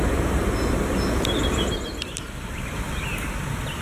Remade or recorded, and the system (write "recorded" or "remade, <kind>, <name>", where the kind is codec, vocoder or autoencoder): remade, vocoder, BigVGAN v2